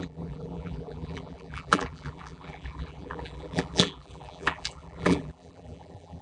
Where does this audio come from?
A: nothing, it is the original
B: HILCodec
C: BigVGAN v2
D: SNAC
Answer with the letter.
C